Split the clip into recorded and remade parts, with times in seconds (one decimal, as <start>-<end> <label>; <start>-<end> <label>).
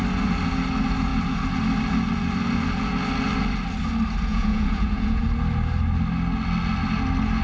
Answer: 0.0-4.3 recorded; 4.3-5.2 remade; 5.2-7.4 recorded